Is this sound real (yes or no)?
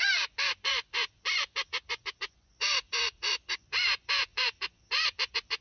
no